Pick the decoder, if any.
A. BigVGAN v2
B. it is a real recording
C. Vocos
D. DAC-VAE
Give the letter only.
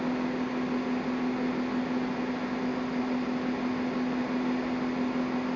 B